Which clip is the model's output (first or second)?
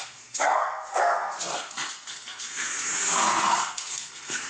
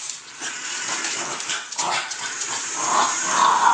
first